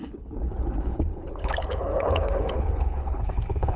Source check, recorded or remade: remade